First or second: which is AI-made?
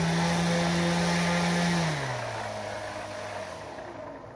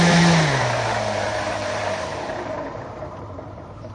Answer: second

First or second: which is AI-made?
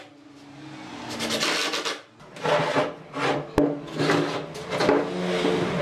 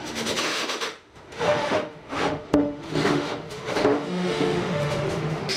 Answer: second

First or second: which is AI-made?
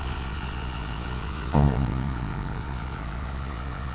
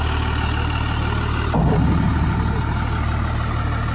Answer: first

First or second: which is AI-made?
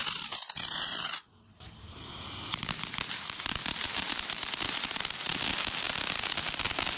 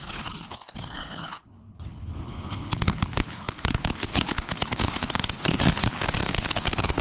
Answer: second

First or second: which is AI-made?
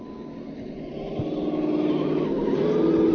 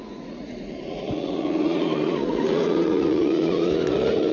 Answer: second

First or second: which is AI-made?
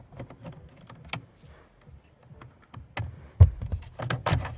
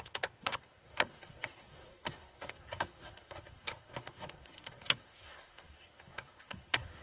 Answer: second